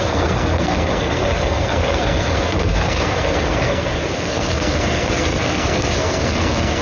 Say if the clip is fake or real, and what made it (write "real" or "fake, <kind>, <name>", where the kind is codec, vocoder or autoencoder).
fake, codec, SNAC